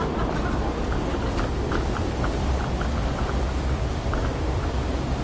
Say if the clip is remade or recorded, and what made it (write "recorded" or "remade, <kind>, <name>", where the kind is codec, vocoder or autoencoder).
recorded